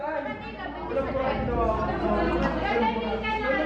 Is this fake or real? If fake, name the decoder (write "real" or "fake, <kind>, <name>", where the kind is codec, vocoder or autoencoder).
real